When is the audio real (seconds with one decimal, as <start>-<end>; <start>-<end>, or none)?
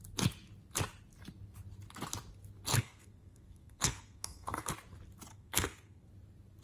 0.0-2.7; 4.7-5.3; 6.1-6.6